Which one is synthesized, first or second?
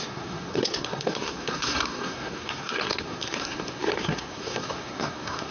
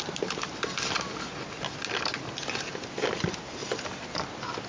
first